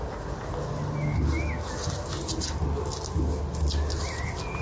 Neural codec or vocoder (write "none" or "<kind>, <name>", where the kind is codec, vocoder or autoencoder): none